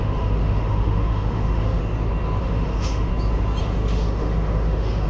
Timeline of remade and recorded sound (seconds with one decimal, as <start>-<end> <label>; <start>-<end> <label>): 0.0-1.8 remade; 1.8-2.4 recorded; 2.4-3.1 remade; 3.1-3.6 recorded; 3.6-5.1 remade